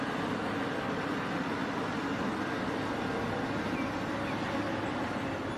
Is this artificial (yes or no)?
no